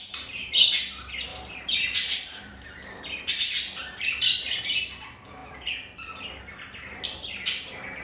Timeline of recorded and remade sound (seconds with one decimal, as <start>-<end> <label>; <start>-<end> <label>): 0.0-1.3 recorded; 1.3-4.6 remade; 4.6-5.4 recorded; 5.4-6.4 remade; 6.4-8.0 recorded